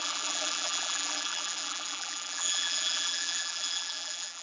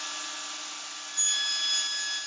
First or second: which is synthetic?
first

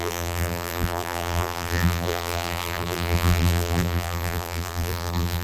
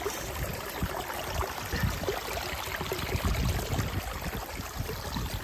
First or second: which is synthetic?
first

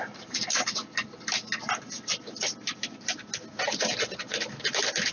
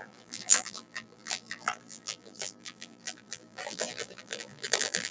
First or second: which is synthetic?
second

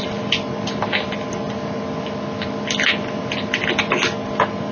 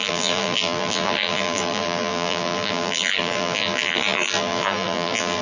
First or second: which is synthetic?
second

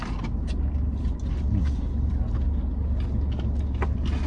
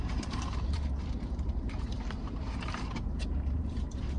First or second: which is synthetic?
second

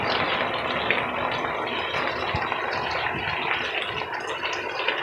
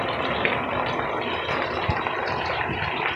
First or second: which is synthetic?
second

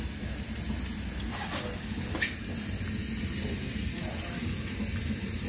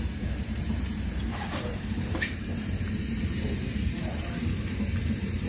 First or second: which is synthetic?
second